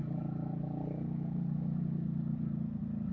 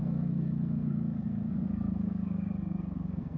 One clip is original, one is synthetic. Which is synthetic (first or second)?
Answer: second